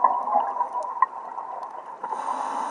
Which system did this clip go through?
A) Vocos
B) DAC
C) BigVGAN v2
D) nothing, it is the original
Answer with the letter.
D